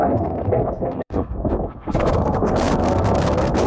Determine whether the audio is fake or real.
fake